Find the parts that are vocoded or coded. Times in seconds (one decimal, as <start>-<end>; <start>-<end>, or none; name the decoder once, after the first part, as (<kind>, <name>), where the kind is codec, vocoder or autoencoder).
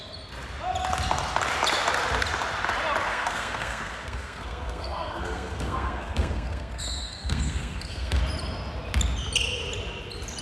3.1-8.2 (codec, SNAC)